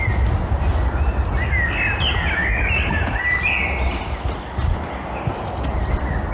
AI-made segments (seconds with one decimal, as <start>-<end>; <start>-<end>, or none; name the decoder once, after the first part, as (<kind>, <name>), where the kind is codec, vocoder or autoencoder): none